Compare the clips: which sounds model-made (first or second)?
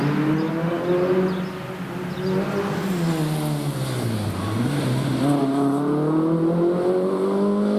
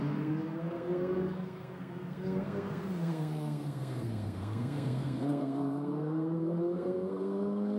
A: second